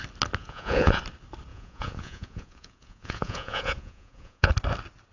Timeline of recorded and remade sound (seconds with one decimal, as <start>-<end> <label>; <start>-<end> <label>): 0.0-0.4 recorded; 0.4-1.0 remade; 1.0-1.5 recorded; 1.5-4.5 remade; 4.5-5.1 recorded